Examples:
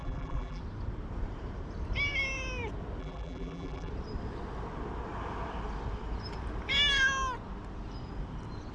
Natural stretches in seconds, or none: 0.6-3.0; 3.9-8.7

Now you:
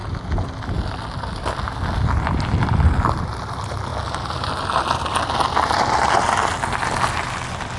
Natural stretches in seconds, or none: 0.0-7.8

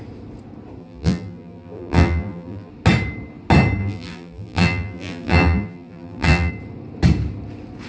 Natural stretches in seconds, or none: 0.0-0.8; 2.7-3.8; 6.5-7.9

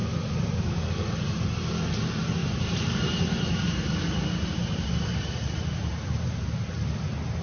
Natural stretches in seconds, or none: 0.0-2.4; 6.5-7.4

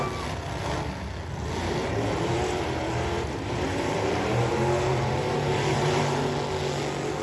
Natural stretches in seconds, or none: 0.0-1.6; 4.5-4.9; 6.0-7.2

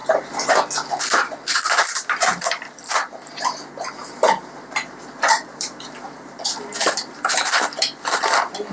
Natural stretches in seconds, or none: 0.0-2.3; 2.8-4.0; 8.2-8.7

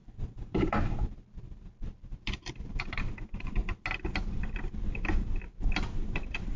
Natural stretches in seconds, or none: 3.6-4.7

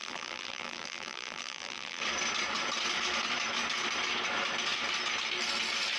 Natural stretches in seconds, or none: 2.0-6.0